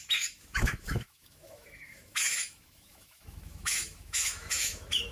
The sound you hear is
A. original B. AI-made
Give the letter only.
B